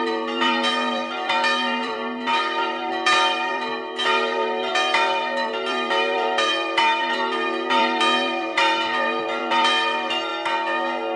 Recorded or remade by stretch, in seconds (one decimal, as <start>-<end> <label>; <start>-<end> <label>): 0.0-10.3 remade; 10.3-11.2 recorded